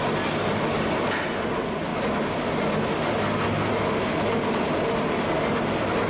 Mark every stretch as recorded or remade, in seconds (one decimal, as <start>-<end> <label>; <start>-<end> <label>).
0.0-6.1 recorded